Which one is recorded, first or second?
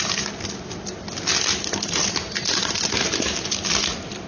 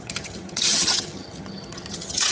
first